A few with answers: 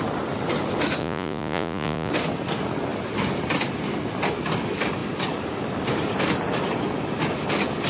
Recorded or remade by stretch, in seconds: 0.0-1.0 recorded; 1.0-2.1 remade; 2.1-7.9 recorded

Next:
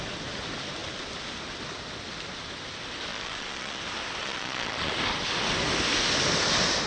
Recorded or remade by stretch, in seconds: 0.0-3.1 recorded; 3.1-3.8 remade; 3.8-4.2 recorded; 4.2-4.9 remade; 4.9-6.9 recorded

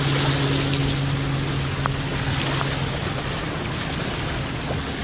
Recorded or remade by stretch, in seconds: 0.0-5.0 recorded

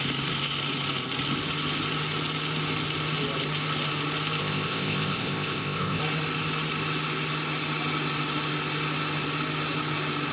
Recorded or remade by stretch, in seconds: 0.0-4.4 recorded; 4.4-6.0 remade; 6.0-10.3 recorded

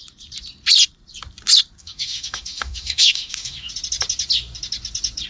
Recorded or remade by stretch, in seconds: 0.0-1.8 recorded; 1.8-3.7 remade; 3.7-5.3 recorded

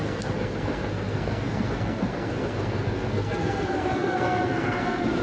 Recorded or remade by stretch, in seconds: 0.0-5.2 remade

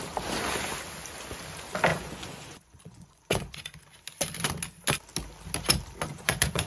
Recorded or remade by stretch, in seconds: 0.0-1.9 recorded; 1.9-3.8 remade; 3.8-6.1 recorded; 6.1-6.7 remade